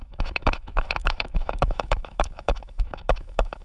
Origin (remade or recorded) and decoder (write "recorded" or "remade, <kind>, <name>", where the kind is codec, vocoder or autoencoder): remade, autoencoder, DAC-VAE